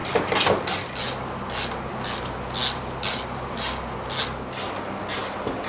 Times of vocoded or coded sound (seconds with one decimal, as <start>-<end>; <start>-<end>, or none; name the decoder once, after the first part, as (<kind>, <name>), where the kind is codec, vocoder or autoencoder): none